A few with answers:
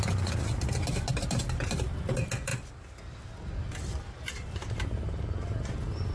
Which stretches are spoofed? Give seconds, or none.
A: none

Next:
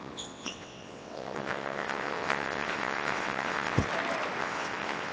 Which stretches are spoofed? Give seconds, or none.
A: 0.0-3.9; 4.4-5.1